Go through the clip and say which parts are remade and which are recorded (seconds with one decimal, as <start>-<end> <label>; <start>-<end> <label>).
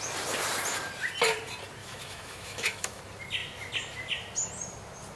0.0-1.8 recorded; 1.8-3.0 remade; 3.0-5.2 recorded